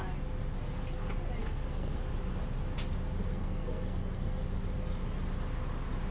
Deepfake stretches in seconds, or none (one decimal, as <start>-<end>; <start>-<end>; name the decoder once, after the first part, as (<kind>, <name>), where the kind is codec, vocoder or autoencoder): 1.4-2.0 (codec, SNAC); 3.3-4.4